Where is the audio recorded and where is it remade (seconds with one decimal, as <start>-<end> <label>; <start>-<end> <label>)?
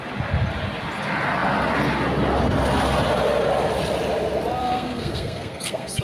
0.0-4.6 recorded; 4.6-6.0 remade